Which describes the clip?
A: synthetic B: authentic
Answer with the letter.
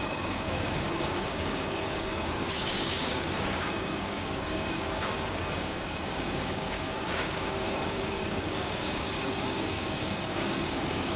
A